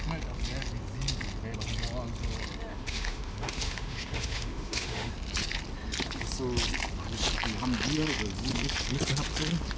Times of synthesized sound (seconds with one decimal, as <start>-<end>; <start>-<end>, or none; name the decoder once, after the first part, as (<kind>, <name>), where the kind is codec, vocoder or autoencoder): 2.7-5.1 (autoencoder, DAC-VAE)